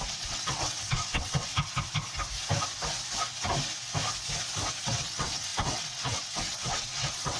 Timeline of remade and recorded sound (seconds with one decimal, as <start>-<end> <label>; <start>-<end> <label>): 0.0-1.5 remade; 1.5-4.8 recorded; 4.8-7.4 remade